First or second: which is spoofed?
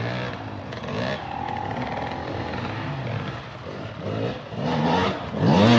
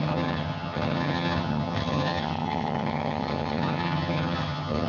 second